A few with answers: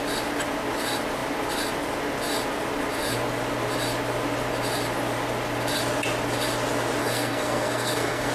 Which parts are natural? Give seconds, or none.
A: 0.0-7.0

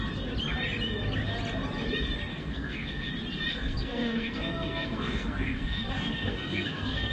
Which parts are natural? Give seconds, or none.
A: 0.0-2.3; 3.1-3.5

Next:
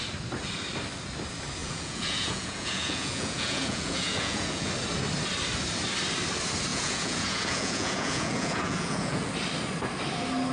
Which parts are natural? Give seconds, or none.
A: 0.0-1.6; 4.7-6.7; 9.3-10.5